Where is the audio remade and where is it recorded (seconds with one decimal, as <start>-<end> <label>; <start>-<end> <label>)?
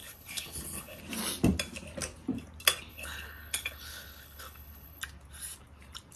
0.0-1.0 remade; 1.0-2.9 recorded; 2.9-5.0 remade; 5.0-6.2 recorded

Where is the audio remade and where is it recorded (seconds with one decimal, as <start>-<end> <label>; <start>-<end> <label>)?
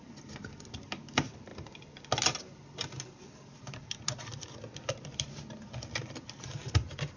0.0-7.2 recorded